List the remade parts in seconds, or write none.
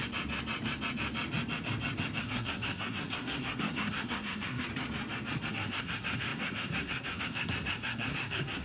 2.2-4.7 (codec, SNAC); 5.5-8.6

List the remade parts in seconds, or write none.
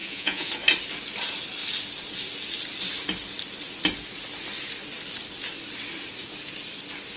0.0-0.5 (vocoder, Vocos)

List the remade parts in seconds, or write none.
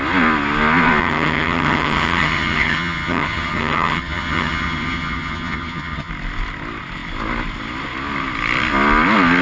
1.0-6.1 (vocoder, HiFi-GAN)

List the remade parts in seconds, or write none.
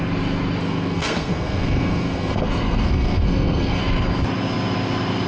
0.6-3.8 (codec, SNAC)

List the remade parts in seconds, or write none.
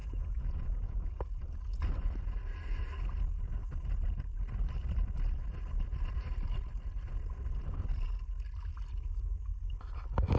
0.0-1.2 (vocoder, Vocos)